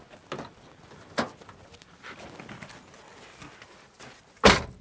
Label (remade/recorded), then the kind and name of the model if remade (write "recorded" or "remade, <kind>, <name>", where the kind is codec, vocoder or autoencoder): recorded